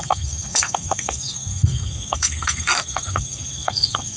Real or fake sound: fake